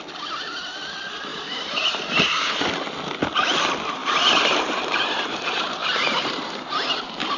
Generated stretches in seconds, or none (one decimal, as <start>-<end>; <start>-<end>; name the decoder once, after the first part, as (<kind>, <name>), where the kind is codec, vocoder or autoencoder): 1.3-2.7 (vocoder, BigVGAN v2); 4.0-6.9